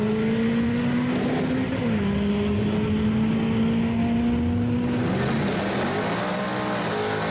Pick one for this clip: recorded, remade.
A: recorded